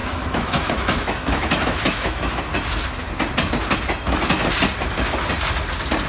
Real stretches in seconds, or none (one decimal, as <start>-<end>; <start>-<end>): 2.4-6.1